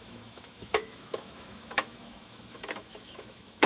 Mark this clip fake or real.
fake